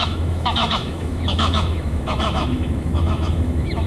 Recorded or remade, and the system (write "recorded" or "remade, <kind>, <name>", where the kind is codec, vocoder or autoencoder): remade, autoencoder, DAC-VAE